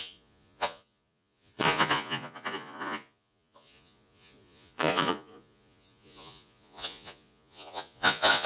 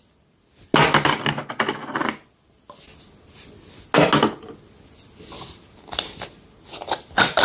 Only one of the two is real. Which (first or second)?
second